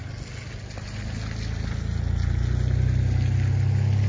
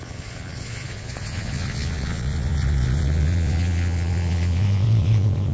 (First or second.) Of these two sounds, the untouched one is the first